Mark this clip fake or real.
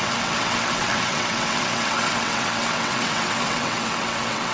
fake